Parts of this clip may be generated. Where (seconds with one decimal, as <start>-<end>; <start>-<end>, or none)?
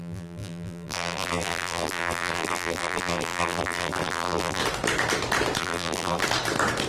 0.0-4.6; 5.6-6.2